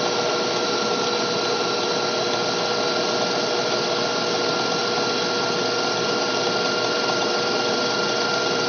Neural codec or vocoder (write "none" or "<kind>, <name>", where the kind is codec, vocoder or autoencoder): none